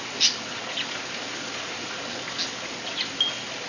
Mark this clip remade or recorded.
recorded